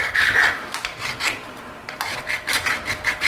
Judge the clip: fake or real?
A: fake